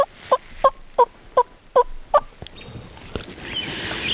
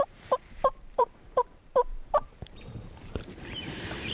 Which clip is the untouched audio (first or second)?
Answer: first